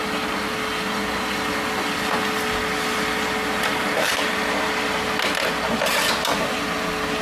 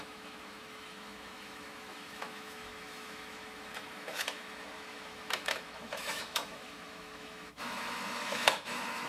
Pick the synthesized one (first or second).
second